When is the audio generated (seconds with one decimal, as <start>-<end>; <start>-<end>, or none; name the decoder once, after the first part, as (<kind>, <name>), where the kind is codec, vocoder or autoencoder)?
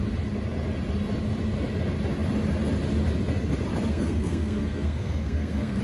3.9-5.8 (codec, SNAC)